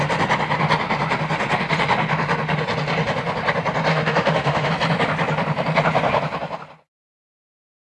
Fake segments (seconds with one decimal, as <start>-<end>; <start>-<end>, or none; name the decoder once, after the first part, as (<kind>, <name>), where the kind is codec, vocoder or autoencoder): 3.9-4.7 (autoencoder, DAC-VAE)